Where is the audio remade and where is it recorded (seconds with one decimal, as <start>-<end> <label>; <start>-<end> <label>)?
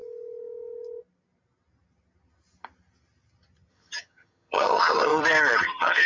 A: 0.0-3.7 recorded; 3.7-5.1 remade; 5.1-5.6 recorded; 5.6-6.1 remade